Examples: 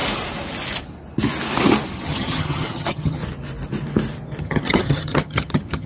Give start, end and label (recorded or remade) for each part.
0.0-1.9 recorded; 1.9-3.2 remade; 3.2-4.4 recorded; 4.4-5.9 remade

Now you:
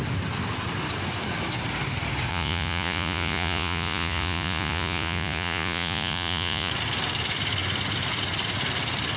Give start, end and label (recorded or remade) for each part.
0.0-2.3 recorded; 2.3-6.7 remade; 6.7-9.2 recorded

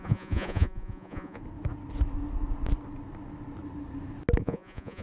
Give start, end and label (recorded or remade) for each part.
0.0-1.4 remade; 1.4-4.4 recorded; 4.4-5.0 remade

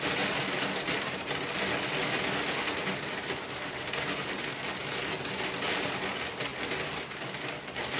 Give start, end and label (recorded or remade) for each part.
0.0-8.0 recorded